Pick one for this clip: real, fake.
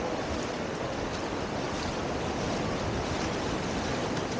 real